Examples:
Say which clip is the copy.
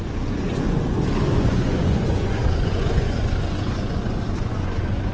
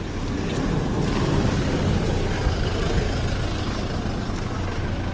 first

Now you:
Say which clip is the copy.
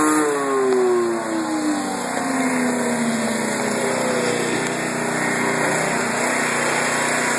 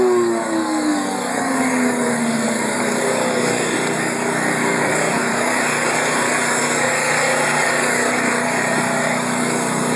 second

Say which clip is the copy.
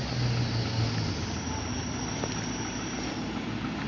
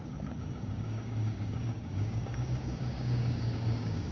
second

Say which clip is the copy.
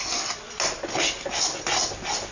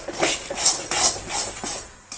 second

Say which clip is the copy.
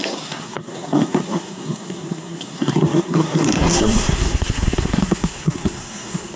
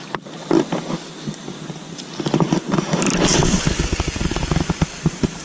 first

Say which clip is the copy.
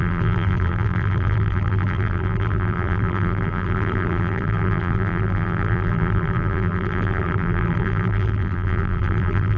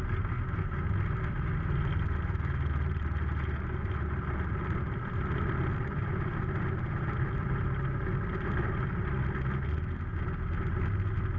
first